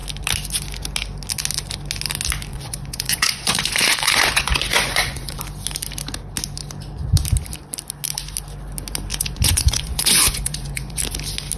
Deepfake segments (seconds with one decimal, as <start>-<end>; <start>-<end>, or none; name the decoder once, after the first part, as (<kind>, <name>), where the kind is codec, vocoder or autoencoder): 2.5-5.4 (vocoder, Vocos); 9.1-11.0

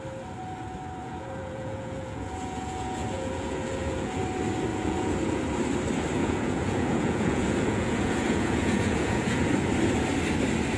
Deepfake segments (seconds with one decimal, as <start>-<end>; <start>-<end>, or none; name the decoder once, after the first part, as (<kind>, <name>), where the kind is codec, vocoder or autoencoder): 1.0-4.2 (vocoder, Vocos); 4.7-5.4; 6.2-9.5